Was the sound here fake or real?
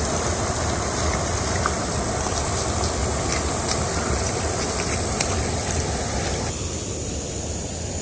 real